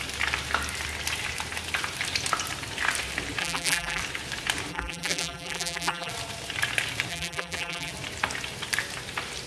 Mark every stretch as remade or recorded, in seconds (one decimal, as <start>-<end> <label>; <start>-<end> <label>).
0.0-3.4 recorded; 3.4-4.0 remade; 4.0-4.7 recorded; 4.7-6.1 remade; 6.1-7.1 recorded; 7.1-7.9 remade; 7.9-9.5 recorded